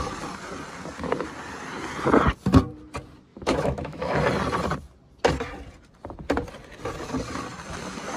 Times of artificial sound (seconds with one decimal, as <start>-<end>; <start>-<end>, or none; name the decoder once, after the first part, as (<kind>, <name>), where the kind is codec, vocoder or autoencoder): 3.3-4.2 (autoencoder, DAC-VAE)